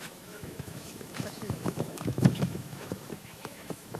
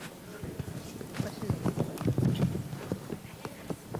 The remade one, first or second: first